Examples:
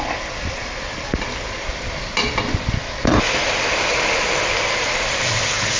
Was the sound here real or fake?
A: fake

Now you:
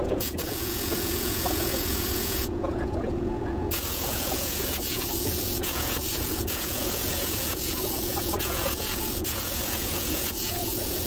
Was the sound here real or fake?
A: fake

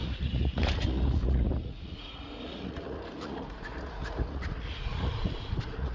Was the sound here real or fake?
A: fake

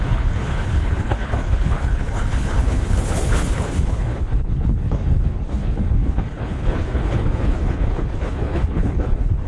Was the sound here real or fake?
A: fake